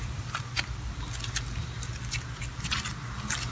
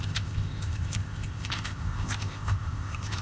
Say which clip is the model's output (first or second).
second